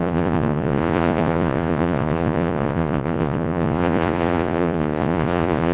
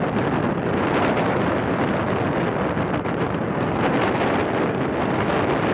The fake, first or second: first